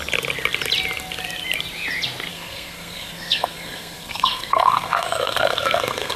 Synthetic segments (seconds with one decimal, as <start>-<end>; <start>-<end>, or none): 2.3-6.2

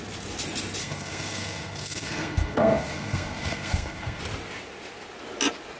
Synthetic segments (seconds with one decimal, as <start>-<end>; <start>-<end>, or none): 0.8-4.2

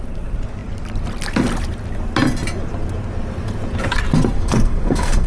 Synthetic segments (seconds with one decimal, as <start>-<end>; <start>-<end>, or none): 4.4-5.3

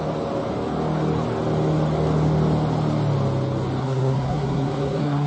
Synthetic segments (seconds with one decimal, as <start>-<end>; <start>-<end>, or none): 3.8-5.3